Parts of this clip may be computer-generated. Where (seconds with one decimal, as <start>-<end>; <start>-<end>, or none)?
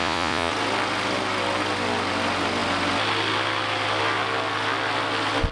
0.0-0.5